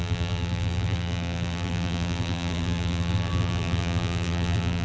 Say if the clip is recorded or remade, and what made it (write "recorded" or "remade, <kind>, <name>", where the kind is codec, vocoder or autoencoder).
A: remade, vocoder, BigVGAN v2